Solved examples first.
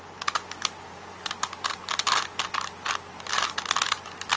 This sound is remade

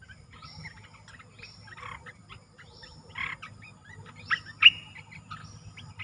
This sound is recorded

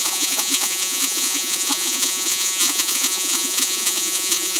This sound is remade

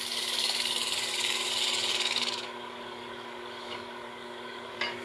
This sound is remade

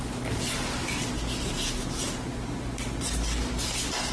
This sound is recorded